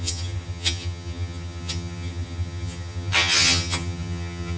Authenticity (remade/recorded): remade